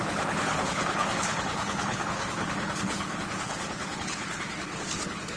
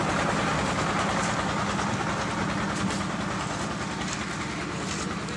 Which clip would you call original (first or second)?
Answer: second